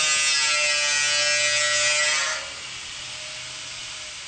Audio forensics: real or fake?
real